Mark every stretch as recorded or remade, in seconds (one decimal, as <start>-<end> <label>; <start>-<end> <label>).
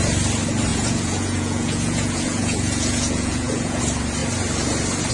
0.0-0.7 recorded; 0.7-3.8 remade; 3.8-5.1 recorded